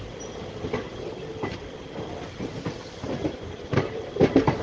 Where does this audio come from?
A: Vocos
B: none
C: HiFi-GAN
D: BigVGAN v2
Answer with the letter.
B